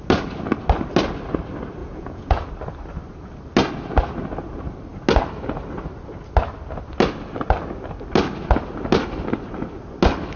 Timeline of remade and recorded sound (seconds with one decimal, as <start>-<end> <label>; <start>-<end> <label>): 0.0-1.8 recorded; 1.8-2.5 remade; 2.5-10.4 recorded

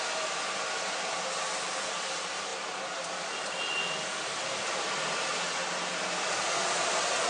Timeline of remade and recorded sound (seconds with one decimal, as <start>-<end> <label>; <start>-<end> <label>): 0.0-7.3 recorded